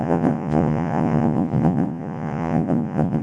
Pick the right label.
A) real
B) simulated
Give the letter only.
B